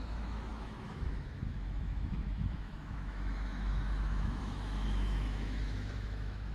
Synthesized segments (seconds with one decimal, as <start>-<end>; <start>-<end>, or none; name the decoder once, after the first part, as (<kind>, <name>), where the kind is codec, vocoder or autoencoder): 0.0-6.5 (autoencoder, DAC-VAE)